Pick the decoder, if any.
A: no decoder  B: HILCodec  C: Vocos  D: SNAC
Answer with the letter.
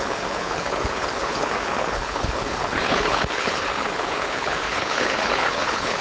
B